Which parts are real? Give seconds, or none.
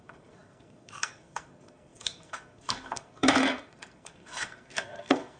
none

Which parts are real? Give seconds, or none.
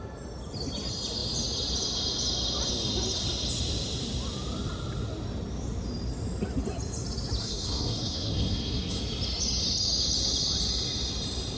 0.0-7.4; 9.0-11.6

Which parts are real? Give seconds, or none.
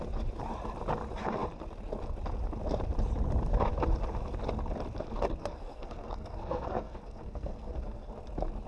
0.0-5.4; 8.1-8.7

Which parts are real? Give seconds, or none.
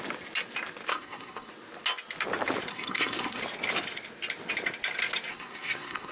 0.0-0.9; 1.5-2.7; 3.4-5.3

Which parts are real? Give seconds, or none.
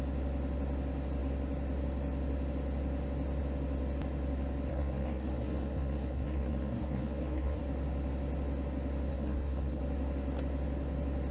0.0-4.7; 7.6-9.1; 9.8-11.3